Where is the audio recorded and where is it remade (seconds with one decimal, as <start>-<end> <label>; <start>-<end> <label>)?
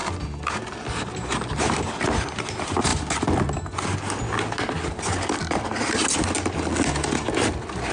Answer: 0.0-7.9 recorded